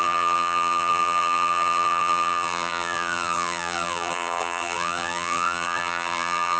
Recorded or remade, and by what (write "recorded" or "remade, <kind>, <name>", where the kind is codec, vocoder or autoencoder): remade, vocoder, BigVGAN v2